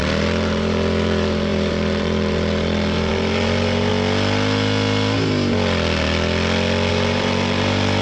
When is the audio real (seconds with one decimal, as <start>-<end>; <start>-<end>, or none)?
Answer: 3.9-6.9